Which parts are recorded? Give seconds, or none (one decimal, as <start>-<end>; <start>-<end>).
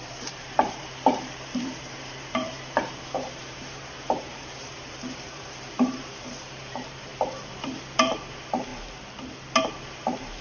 8.7-9.6